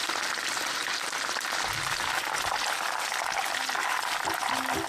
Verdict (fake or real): real